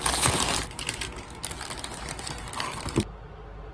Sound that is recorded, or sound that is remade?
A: recorded